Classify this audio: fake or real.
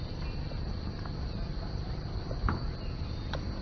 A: real